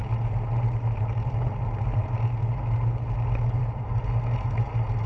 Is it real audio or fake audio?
real